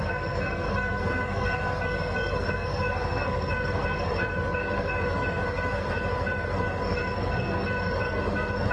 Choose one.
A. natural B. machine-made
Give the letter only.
B